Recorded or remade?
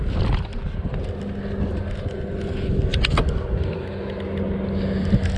recorded